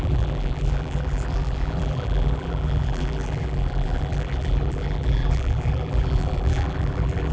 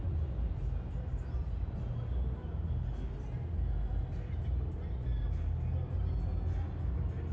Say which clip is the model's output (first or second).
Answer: first